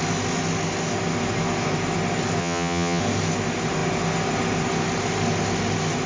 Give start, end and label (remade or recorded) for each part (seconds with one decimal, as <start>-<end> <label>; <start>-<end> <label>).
0.0-2.4 recorded; 2.4-3.0 remade; 3.0-6.1 recorded